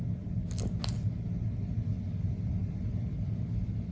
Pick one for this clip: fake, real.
real